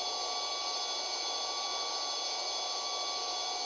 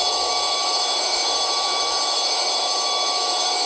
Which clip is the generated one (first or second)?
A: second